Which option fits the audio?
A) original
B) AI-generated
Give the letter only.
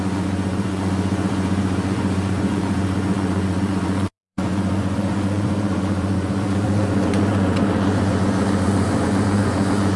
B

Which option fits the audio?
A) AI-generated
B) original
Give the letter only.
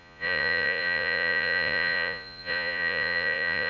A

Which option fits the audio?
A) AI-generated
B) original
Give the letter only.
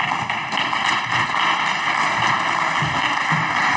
B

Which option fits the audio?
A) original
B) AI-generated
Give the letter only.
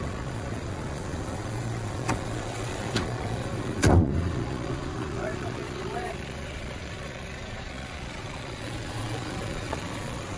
B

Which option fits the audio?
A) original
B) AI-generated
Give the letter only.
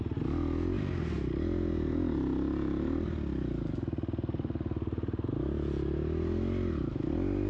A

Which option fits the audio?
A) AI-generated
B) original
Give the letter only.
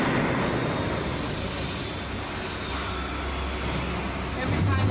B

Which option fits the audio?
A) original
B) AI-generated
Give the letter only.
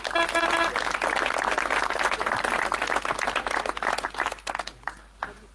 A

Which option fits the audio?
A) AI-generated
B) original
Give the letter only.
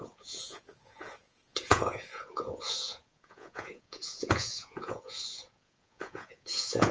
A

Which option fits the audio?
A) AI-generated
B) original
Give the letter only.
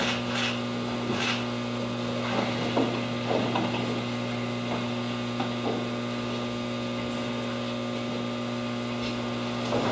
B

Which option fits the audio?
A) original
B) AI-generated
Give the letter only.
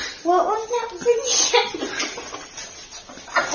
A